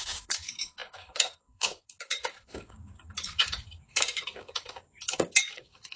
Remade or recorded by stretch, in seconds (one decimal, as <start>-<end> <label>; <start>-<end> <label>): 0.0-6.0 remade